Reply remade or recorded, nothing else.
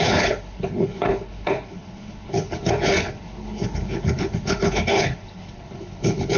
remade